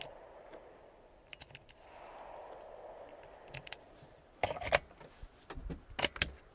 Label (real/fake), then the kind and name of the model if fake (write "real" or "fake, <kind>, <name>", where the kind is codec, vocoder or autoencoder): real